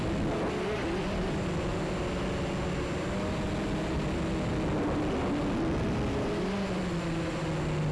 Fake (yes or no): no